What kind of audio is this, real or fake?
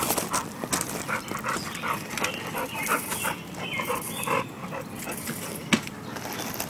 real